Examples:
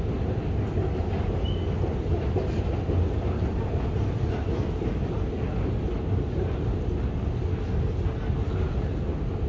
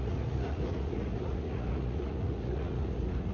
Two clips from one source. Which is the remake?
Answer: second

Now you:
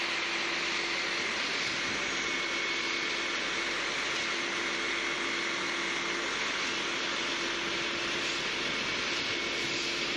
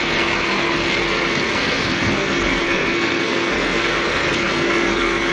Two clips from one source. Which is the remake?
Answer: second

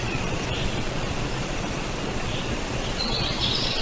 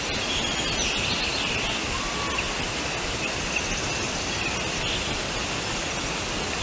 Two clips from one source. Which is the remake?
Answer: first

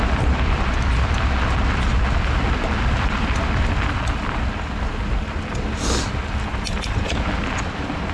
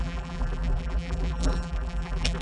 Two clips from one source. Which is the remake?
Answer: second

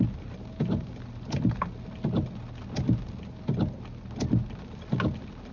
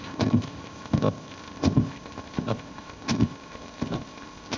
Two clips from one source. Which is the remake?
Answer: second